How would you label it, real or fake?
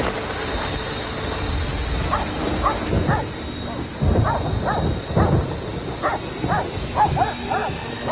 real